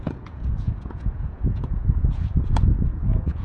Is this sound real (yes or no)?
no